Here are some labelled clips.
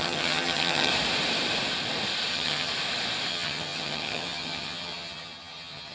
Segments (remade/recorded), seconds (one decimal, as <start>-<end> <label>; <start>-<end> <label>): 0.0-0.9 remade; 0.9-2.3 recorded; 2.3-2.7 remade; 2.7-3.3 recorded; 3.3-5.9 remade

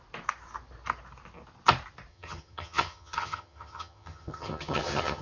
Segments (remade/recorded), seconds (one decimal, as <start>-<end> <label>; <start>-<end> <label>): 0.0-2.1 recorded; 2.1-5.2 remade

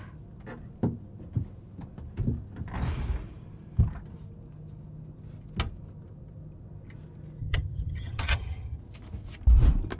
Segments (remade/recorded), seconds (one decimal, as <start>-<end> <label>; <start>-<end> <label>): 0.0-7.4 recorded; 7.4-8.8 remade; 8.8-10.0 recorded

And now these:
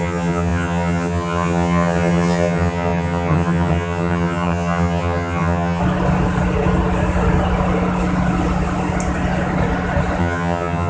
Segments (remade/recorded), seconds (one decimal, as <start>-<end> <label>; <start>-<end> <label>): 0.0-5.8 remade; 5.8-10.2 recorded; 10.2-10.9 remade

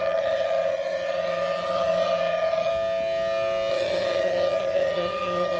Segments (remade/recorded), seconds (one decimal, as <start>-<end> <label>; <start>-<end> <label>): 0.0-2.7 remade; 2.7-3.7 recorded; 3.7-5.6 remade